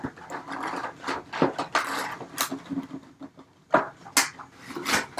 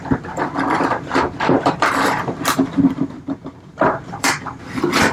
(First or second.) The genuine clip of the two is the first